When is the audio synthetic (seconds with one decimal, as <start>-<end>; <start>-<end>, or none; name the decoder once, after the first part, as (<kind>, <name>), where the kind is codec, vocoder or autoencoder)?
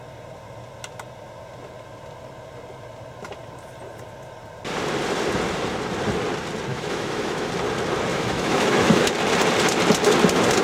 6.7-7.5 (autoencoder, DAC-VAE); 8.1-9.1